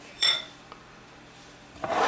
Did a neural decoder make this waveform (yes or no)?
yes